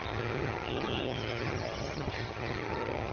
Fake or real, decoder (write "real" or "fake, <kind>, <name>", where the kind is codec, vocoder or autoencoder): fake, vocoder, HiFi-GAN